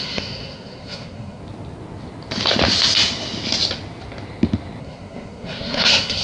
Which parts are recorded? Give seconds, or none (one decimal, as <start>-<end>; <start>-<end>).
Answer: 1.4-4.8